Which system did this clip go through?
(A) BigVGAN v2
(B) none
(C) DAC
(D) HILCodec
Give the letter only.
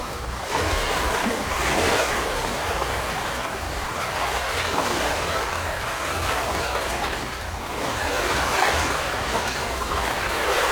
C